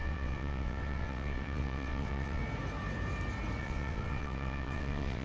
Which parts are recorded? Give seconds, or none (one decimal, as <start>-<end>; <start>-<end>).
2.4-3.6